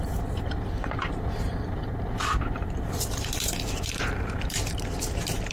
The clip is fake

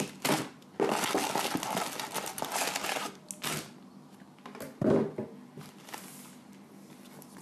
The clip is real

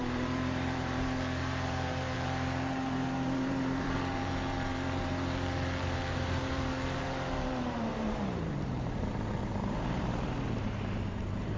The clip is fake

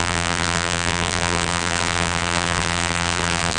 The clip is fake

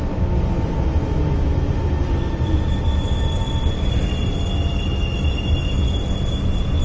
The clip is real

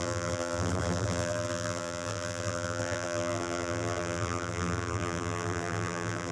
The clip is fake